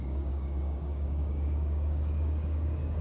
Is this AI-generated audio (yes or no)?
yes